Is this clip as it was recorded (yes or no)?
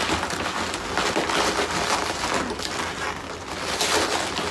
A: yes